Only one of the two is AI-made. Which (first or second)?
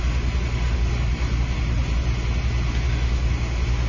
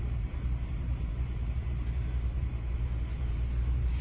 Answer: second